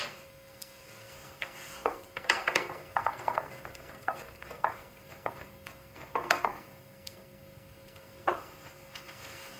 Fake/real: fake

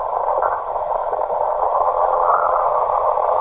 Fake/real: fake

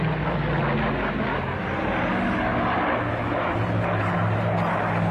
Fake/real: real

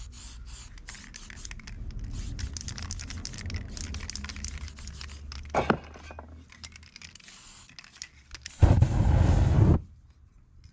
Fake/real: real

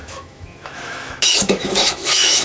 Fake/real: fake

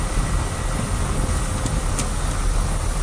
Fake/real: real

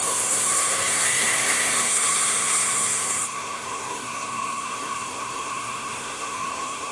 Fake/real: fake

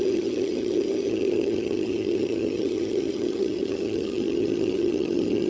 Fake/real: fake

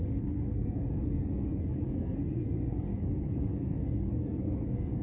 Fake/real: fake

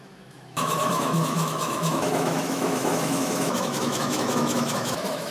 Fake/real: fake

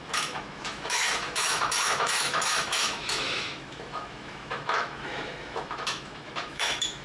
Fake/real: fake